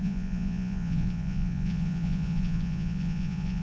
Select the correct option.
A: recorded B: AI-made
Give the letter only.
B